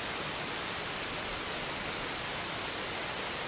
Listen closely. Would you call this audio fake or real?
real